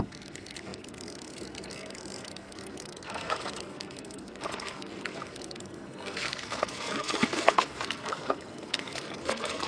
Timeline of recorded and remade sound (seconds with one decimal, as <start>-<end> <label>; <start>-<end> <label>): 0.0-9.7 remade

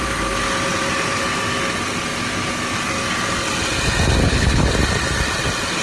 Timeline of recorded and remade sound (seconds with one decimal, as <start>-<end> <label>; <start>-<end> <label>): 0.0-4.2 recorded; 4.2-4.7 remade; 4.7-5.8 recorded